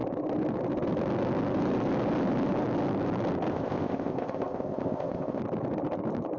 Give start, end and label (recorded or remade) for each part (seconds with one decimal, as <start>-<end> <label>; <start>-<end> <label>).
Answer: 0.0-3.5 recorded; 3.5-5.4 remade; 5.4-6.4 recorded